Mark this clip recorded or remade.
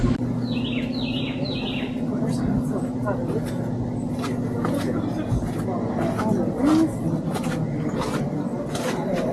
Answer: recorded